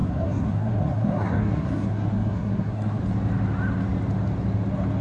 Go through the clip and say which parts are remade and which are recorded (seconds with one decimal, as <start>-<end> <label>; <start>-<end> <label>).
0.0-3.0 remade; 3.0-5.0 recorded